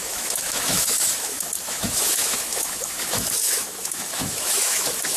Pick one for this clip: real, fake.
fake